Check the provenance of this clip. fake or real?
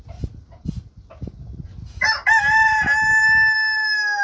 real